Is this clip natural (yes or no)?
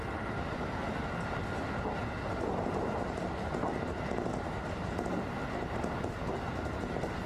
yes